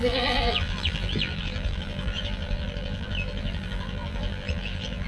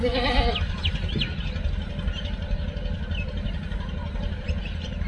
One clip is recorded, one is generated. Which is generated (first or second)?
first